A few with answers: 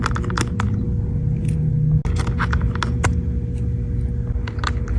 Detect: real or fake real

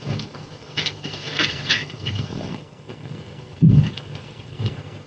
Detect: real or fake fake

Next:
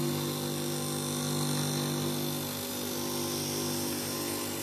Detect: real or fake real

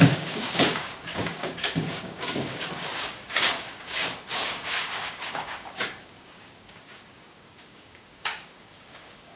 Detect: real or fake fake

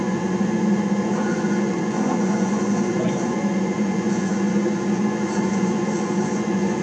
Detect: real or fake fake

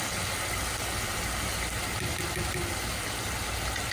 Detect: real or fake real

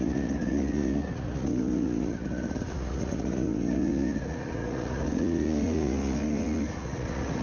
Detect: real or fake fake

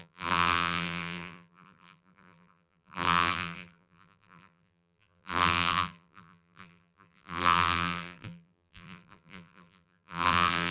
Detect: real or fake fake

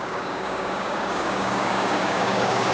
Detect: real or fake fake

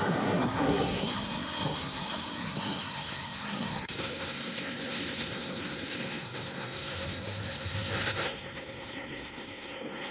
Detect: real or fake fake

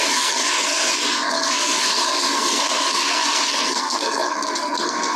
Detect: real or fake fake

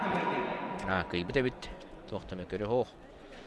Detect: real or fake fake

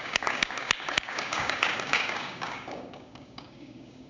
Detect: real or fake fake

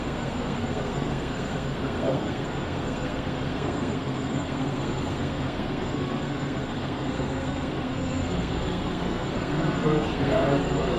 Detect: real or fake fake